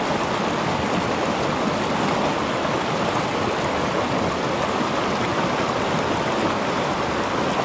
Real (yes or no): yes